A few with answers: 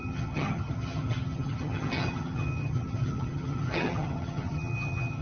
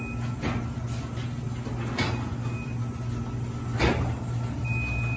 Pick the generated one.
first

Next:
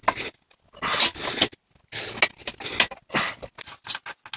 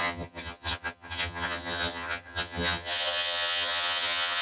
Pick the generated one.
second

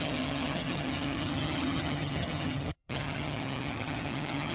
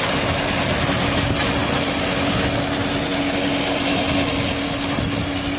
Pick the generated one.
first